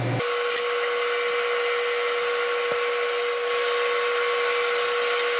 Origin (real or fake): real